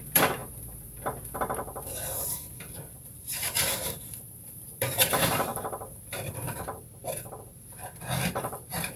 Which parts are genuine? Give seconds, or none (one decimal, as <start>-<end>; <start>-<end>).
5.5-8.3